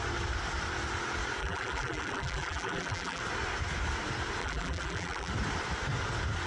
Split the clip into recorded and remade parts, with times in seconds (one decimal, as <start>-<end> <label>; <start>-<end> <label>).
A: 0.0-1.4 recorded; 1.4-3.2 remade; 3.2-4.4 recorded; 4.4-5.3 remade; 5.3-6.5 recorded